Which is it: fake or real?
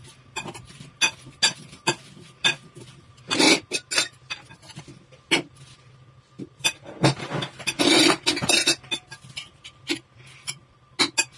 real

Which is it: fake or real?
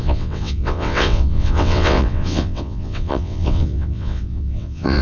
fake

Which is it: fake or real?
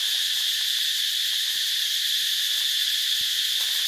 real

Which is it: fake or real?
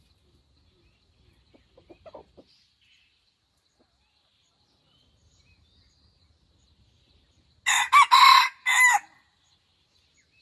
real